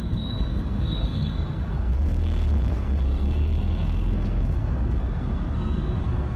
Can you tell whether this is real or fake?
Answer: fake